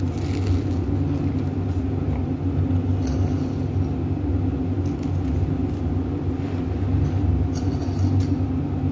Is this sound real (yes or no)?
yes